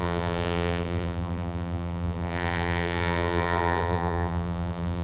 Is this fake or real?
fake